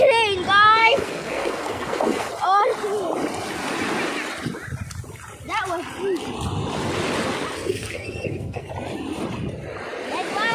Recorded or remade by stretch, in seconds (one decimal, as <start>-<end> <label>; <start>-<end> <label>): 0.0-0.8 recorded; 0.8-2.3 remade; 2.3-7.6 recorded; 7.6-8.7 remade; 8.7-10.5 recorded